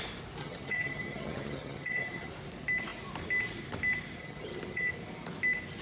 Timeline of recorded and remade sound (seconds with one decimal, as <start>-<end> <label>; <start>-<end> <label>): 0.0-0.4 recorded; 0.4-2.3 remade; 2.3-4.2 recorded; 4.2-4.9 remade; 4.9-5.8 recorded